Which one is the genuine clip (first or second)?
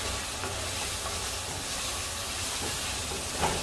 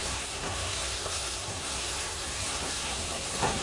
first